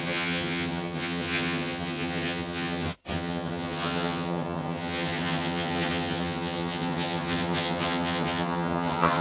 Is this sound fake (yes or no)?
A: yes